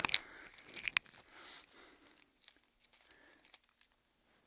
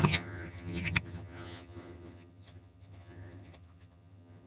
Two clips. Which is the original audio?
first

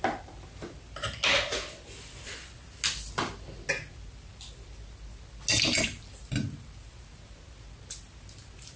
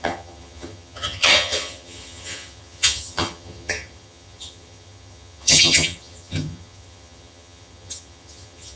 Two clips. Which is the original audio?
first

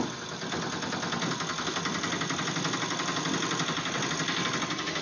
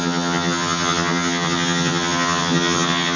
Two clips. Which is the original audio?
first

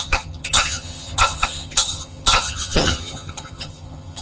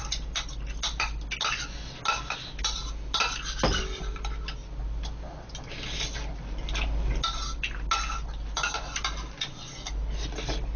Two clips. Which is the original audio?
second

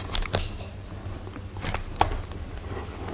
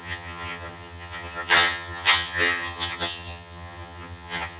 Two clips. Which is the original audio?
first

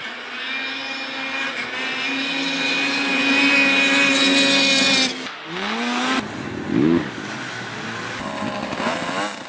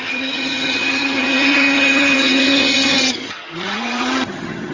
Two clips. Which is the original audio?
first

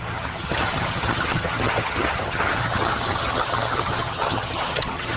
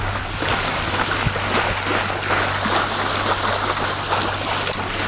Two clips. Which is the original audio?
second